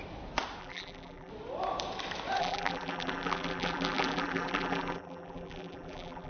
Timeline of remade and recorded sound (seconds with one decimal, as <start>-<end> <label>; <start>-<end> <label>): 0.0-0.6 recorded; 0.6-1.3 remade; 1.3-2.4 recorded; 2.4-6.3 remade